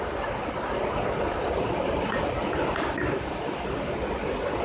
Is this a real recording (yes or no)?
yes